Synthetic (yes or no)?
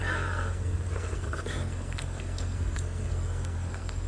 yes